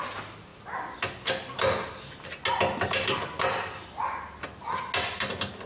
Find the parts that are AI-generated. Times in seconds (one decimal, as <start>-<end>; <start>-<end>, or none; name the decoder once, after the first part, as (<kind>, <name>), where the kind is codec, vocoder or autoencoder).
none